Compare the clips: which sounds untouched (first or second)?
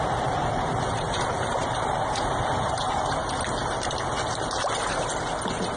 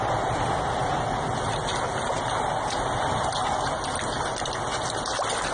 second